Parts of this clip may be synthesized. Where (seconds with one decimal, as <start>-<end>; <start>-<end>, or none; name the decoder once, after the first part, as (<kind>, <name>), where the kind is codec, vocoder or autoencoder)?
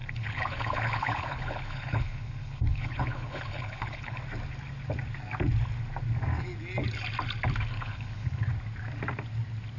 0.0-4.2 (codec, HILCodec); 7.7-8.5